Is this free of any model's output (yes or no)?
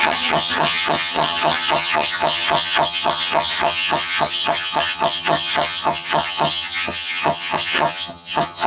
no